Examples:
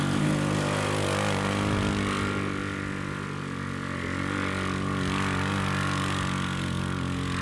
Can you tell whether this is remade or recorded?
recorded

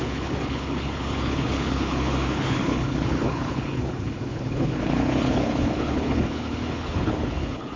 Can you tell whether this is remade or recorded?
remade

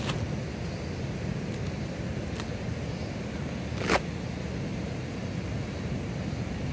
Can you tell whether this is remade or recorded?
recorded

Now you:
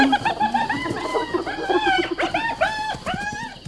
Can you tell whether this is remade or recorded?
recorded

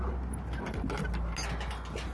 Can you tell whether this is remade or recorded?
recorded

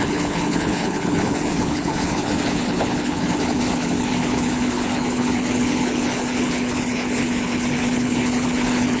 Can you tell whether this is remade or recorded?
remade